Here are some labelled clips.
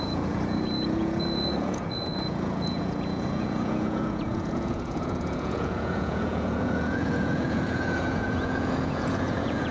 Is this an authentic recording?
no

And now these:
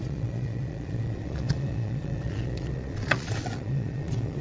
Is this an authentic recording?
no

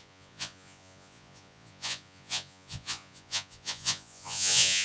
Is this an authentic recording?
no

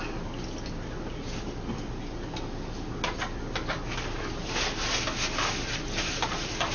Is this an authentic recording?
yes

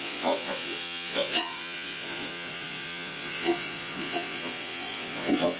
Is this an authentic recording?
no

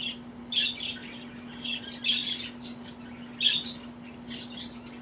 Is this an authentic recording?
yes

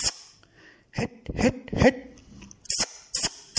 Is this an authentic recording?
yes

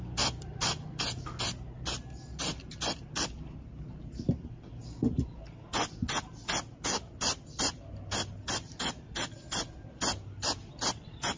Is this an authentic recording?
yes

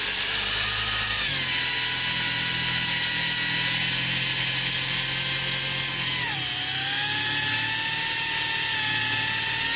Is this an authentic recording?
yes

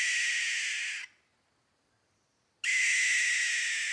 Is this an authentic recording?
yes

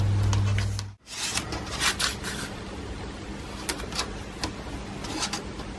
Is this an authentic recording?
yes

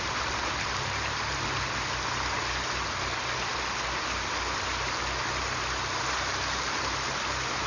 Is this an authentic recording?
yes